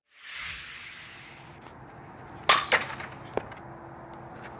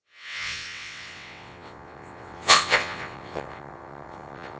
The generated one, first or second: second